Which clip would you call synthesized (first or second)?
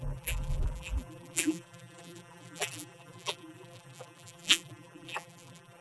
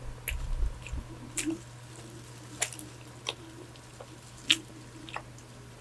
first